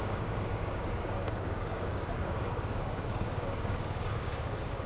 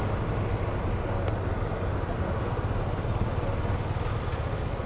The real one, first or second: second